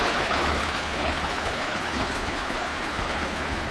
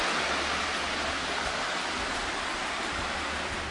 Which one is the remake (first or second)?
first